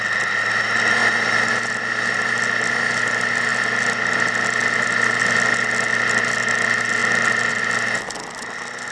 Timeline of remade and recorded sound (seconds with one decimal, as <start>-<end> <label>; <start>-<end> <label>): 0.0-8.9 recorded